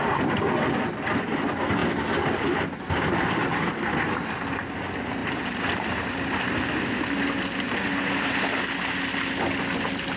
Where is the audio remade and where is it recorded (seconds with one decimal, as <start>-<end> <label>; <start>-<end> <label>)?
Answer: 0.0-10.2 recorded